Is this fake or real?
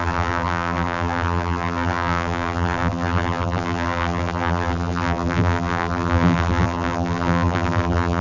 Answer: fake